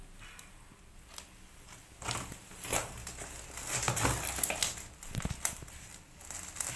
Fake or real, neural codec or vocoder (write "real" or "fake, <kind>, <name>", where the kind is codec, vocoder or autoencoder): real